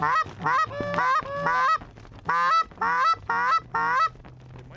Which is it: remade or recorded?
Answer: recorded